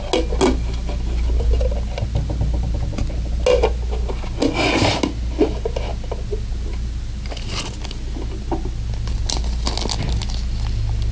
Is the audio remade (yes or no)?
no